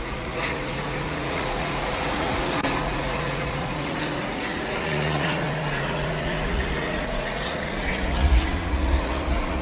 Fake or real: fake